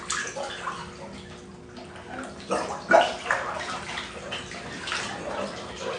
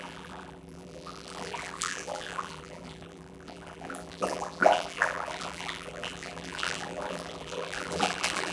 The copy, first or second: second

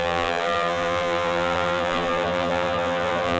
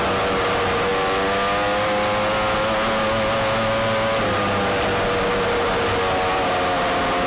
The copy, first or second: first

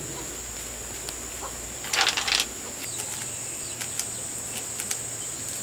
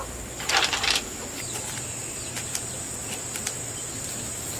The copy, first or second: second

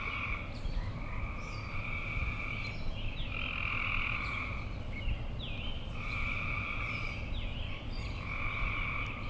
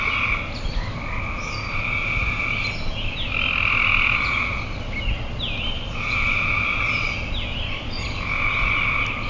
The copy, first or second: first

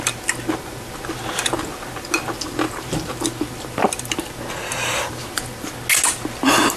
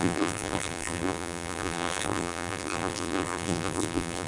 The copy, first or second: second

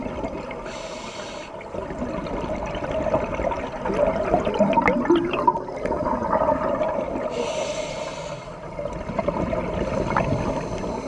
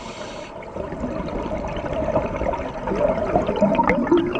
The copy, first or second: second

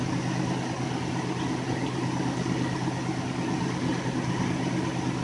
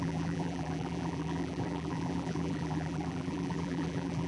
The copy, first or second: second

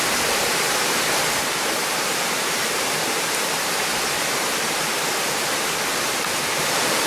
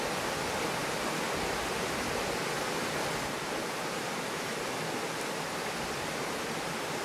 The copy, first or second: first